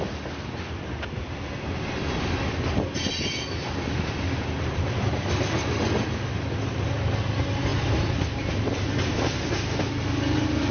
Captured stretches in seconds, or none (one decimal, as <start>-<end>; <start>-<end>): 0.0-10.7